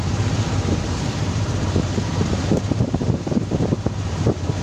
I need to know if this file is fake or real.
fake